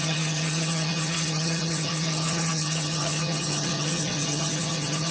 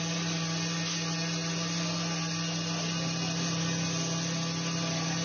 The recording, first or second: second